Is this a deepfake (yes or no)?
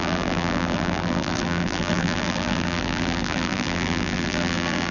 yes